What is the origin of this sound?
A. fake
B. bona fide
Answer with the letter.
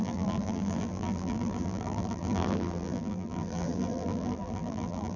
A